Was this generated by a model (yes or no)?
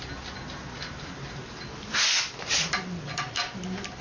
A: no